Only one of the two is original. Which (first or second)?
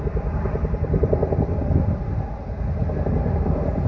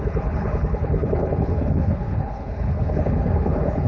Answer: first